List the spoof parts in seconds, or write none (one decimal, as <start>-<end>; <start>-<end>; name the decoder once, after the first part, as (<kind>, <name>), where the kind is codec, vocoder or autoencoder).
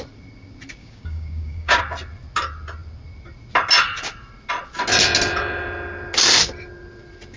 0.8-1.8 (codec, DAC)